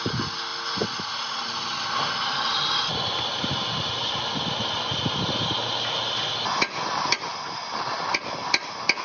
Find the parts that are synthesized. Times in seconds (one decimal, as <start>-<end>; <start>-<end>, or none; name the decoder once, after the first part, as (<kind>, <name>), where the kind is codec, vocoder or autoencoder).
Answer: none